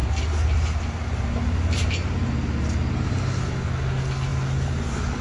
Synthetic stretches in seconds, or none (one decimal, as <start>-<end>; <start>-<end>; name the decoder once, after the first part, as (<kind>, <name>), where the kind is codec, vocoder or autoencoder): none